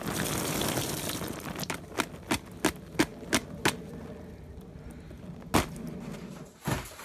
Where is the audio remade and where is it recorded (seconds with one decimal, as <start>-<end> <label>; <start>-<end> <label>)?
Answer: 0.0-7.0 recorded